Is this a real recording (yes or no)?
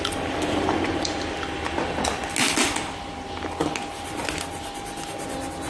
yes